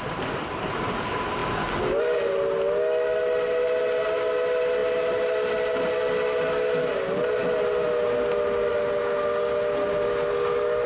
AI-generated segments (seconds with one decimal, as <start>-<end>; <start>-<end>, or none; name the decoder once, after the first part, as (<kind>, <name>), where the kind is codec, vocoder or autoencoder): none